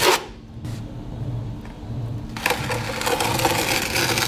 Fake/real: real